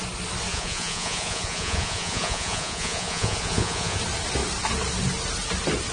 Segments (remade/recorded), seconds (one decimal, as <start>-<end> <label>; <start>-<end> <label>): 0.0-0.5 recorded; 0.5-4.0 remade; 4.0-5.9 recorded